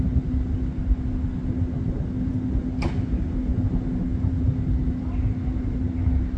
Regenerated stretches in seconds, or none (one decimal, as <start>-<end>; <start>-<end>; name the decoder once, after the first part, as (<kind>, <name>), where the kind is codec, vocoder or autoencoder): none